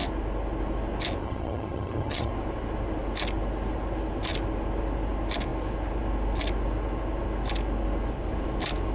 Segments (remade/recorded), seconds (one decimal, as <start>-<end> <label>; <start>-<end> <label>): 0.0-1.2 recorded; 1.2-2.3 remade; 2.3-8.9 recorded